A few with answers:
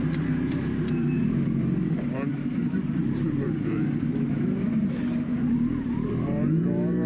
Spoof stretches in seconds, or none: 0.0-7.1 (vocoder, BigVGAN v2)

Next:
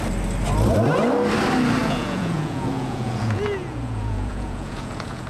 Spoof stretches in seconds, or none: 1.8-5.3 (vocoder, Vocos)